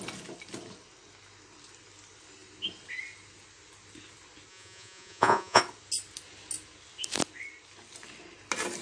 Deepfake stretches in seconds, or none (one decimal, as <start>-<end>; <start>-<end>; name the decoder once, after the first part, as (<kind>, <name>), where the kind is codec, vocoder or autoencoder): 4.5-5.6 (vocoder, Vocos)